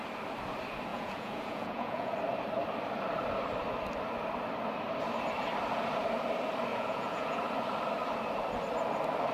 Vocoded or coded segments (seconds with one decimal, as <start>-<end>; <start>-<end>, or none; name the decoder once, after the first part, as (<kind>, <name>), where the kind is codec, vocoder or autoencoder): 0.9-2.1 (vocoder, Vocos); 6.7-7.4